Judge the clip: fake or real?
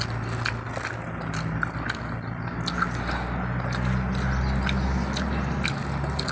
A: real